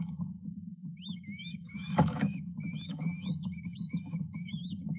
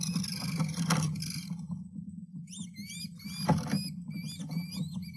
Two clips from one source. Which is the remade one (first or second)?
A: first